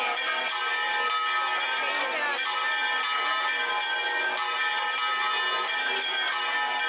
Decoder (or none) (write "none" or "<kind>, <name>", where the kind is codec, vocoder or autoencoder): none